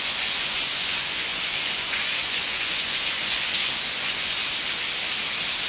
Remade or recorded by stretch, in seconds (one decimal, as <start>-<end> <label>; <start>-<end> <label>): 0.0-4.4 remade; 4.4-5.7 recorded